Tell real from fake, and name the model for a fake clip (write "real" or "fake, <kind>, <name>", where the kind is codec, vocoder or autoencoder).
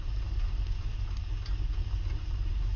real